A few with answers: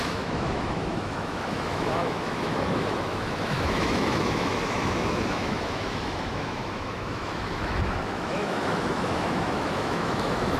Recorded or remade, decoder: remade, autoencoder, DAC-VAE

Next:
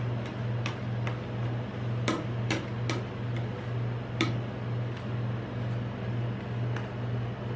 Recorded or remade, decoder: recorded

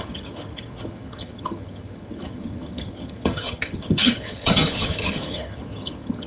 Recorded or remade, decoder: remade, vocoder, HiFi-GAN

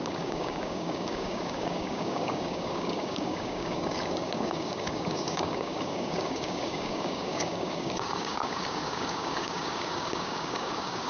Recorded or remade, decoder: remade, codec, DAC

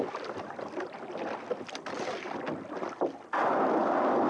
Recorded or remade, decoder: recorded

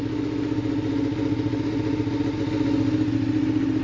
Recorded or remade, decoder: recorded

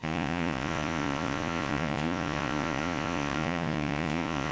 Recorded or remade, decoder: remade, vocoder, Vocos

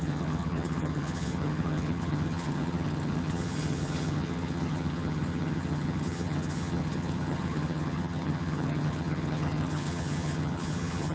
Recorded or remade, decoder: remade, vocoder, HiFi-GAN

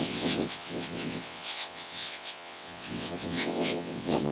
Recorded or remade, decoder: remade, vocoder, WaveNeXt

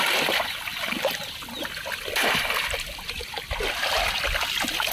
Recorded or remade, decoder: recorded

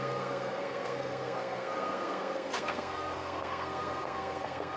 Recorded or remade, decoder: remade, codec, SNAC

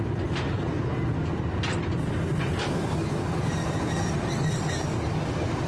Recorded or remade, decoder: recorded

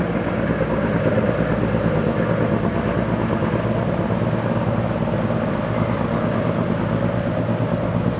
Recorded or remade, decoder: recorded